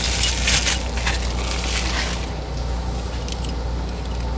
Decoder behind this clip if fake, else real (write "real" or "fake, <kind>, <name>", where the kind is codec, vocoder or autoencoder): real